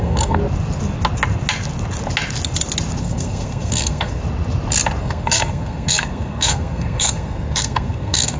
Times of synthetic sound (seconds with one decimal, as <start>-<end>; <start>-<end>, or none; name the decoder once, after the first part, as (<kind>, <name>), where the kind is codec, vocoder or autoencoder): 0.0-0.4 (codec, SNAC); 3.0-4.2; 5.0-8.4